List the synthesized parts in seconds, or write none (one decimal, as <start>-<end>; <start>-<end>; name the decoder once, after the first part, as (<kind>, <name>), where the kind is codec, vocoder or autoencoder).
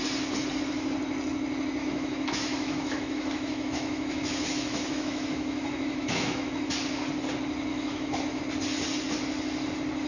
1.8-6.7 (autoencoder, DAC-VAE); 7.7-8.4